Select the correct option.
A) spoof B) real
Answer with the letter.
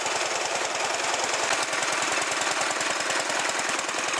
B